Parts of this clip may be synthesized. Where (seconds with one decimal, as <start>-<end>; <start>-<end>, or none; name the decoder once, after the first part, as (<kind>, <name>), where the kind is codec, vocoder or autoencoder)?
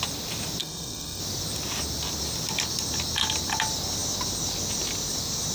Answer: 0.6-1.2 (codec, SNAC)